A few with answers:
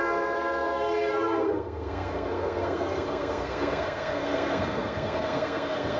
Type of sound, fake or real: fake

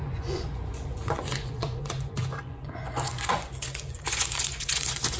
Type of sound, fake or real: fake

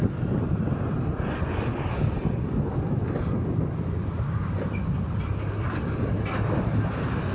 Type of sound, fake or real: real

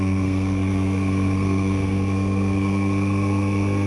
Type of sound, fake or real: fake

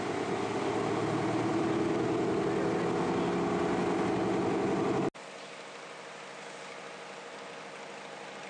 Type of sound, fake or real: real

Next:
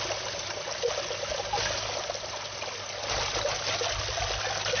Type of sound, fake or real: real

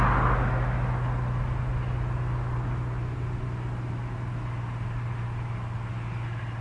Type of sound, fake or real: real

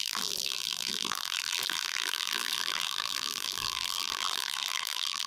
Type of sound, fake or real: fake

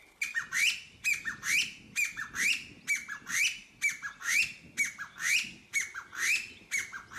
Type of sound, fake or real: real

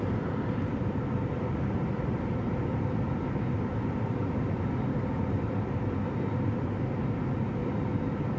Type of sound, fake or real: real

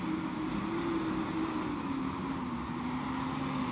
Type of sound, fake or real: real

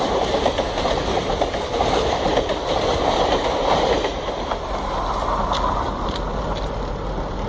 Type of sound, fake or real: real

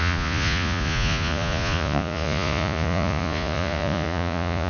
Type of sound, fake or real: fake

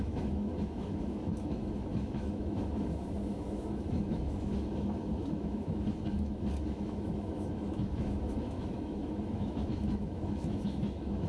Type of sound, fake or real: fake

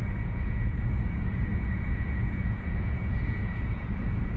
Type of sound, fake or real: fake